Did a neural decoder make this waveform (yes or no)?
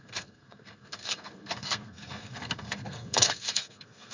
yes